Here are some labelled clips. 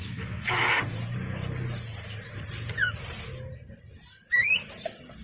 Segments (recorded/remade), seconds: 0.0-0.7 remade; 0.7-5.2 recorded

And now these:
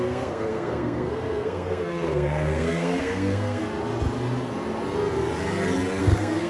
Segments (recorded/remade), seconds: 0.0-3.6 remade; 3.6-6.0 recorded; 6.0-6.5 remade

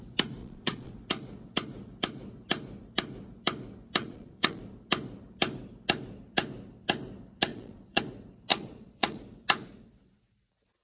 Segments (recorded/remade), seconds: 0.0-0.4 recorded; 0.4-0.9 remade; 0.9-4.0 recorded; 4.0-4.6 remade; 4.6-7.5 recorded; 7.5-8.0 remade; 8.0-8.5 recorded; 8.5-9.2 remade; 9.2-10.8 recorded

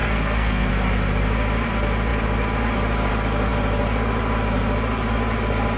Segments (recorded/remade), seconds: 0.0-0.7 remade; 0.7-5.8 recorded

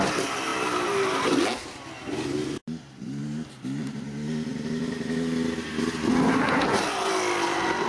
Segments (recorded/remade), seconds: 0.0-7.9 recorded

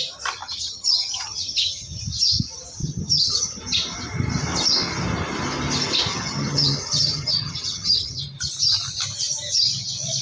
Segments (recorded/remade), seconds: 0.0-0.4 recorded; 0.4-2.0 remade; 2.0-2.8 recorded; 2.8-3.6 remade; 3.6-6.1 recorded; 6.1-8.2 remade; 8.2-10.2 recorded

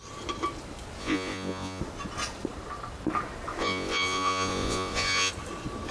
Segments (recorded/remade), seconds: 0.0-1.0 recorded; 1.0-1.8 remade; 1.8-3.6 recorded; 3.6-5.3 remade; 5.3-5.9 recorded